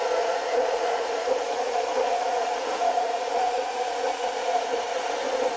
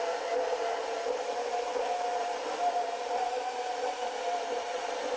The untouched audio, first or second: second